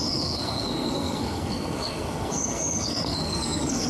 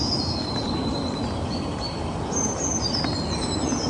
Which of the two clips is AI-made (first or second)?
first